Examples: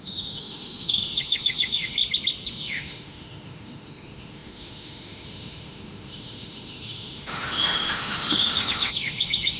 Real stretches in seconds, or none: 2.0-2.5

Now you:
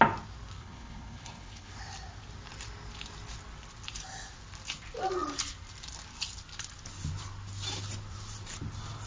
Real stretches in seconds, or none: 0.0-0.6; 1.8-9.1

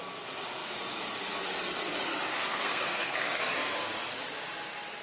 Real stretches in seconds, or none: 0.0-2.3; 3.4-5.0

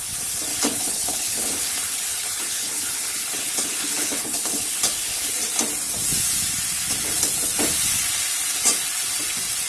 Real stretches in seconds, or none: 0.0-0.5; 5.3-9.7

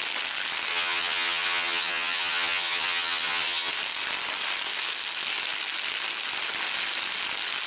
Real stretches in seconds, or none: 0.0-0.7; 3.7-7.7

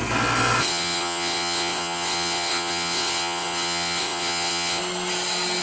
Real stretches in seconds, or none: 0.0-0.6; 4.8-5.6